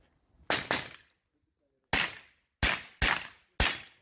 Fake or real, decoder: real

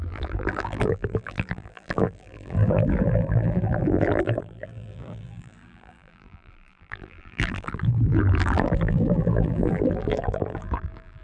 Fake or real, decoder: fake, vocoder, BigVGAN v2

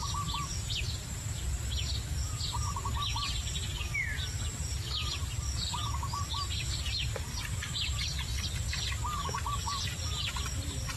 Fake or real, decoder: real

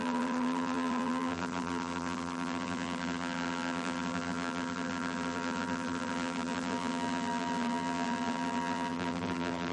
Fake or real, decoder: fake, vocoder, BigVGAN v2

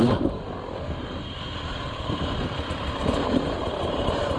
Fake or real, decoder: fake, vocoder, BigVGAN v2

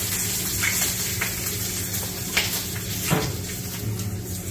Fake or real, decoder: real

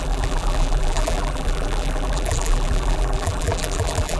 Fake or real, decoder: fake, vocoder, BigVGAN v2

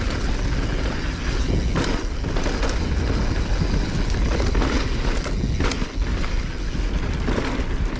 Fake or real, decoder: real